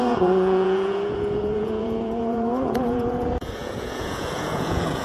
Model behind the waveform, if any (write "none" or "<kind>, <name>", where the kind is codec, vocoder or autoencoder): vocoder, Vocos